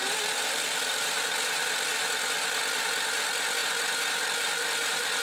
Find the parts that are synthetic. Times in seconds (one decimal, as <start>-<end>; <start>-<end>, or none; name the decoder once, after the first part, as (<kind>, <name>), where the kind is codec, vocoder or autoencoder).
0.0-1.9 (vocoder, BigVGAN v2); 2.7-3.6; 4.2-5.2